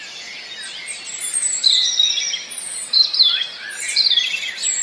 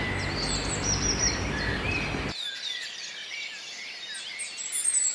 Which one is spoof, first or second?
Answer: first